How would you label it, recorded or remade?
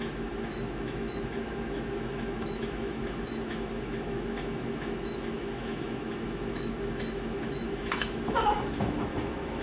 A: remade